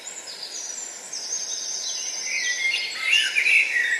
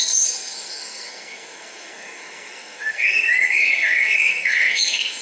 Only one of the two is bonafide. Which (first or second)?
first